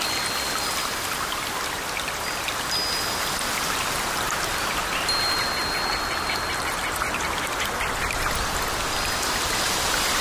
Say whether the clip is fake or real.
real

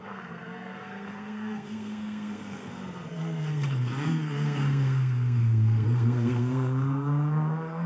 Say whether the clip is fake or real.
fake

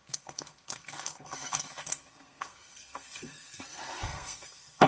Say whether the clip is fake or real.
fake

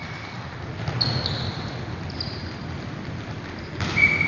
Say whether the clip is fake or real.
real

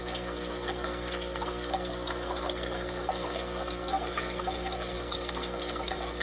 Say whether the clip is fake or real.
fake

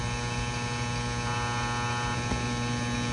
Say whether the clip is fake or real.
real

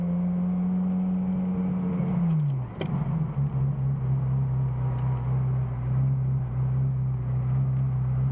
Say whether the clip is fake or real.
real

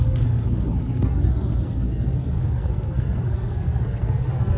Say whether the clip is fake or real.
fake